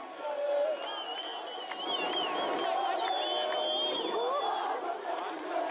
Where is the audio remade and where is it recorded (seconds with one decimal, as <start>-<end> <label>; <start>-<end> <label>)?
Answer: 0.0-5.7 recorded